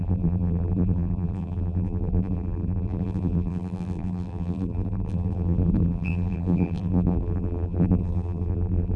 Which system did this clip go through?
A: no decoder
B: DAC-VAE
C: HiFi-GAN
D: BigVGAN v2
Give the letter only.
D